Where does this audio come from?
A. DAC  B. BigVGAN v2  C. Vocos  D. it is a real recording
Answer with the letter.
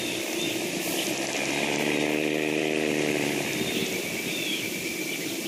B